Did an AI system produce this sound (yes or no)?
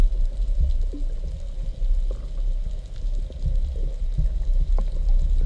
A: no